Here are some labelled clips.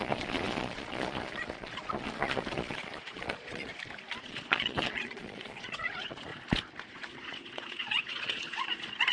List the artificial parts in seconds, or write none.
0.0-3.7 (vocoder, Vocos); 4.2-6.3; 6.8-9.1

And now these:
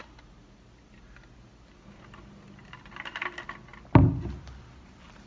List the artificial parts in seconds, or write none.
none

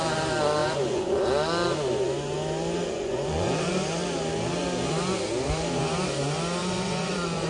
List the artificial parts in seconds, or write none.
0.6-1.2 (vocoder, Vocos); 2.8-3.7; 6.6-7.5

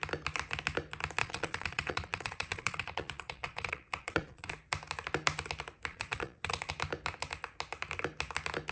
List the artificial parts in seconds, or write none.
1.2-4.5 (vocoder, Vocos); 5.9-6.7

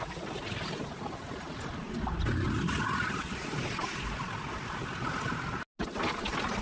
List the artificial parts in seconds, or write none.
none

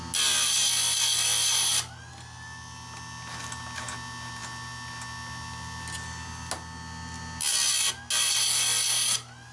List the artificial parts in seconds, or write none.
none

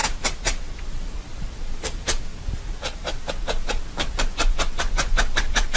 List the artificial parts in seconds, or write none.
4.3-5.2 (vocoder, Vocos)

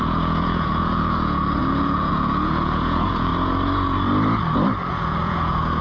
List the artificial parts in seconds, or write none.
0.0-3.3 (vocoder, Vocos); 4.9-5.8